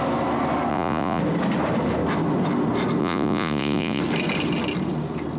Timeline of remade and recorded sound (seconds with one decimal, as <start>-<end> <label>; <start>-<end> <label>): 0.0-0.7 recorded; 0.7-1.2 remade; 1.2-3.0 recorded; 3.0-4.0 remade; 4.0-5.4 recorded

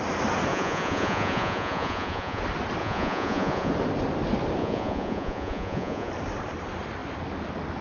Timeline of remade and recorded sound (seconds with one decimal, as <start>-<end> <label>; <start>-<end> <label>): 0.0-0.5 recorded; 0.5-2.4 remade; 2.4-2.8 recorded; 2.8-3.7 remade; 3.7-4.6 recorded; 4.6-6.1 remade; 6.1-7.8 recorded

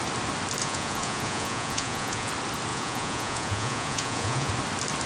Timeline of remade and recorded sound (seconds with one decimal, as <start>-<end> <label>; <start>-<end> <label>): 0.0-0.6 recorded; 0.6-2.3 remade; 2.3-2.7 recorded; 2.7-4.5 remade; 4.5-5.1 recorded

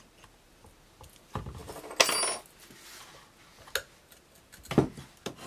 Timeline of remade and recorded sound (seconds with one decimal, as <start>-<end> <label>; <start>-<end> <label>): 0.0-5.5 recorded

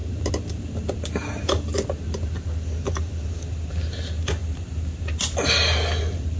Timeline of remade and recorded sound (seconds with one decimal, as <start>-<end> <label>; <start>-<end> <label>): 0.0-6.4 recorded